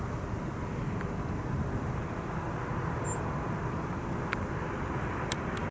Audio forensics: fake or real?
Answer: real